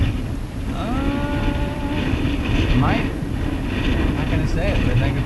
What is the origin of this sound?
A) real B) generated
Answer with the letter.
A